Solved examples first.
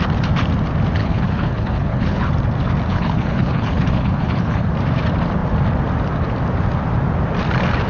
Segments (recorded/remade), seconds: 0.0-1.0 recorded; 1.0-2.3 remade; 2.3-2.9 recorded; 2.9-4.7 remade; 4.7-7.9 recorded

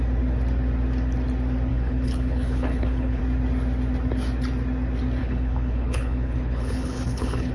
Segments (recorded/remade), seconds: 0.0-1.7 recorded; 1.7-3.2 remade; 3.2-5.2 recorded; 5.2-7.5 remade

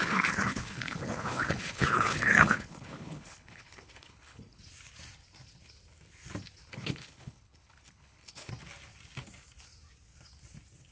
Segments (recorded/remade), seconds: 0.0-4.6 remade; 4.6-6.7 recorded; 6.7-8.5 remade; 8.5-10.9 recorded